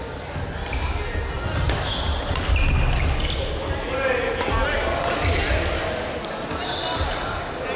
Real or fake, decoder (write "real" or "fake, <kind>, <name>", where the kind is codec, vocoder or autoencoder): real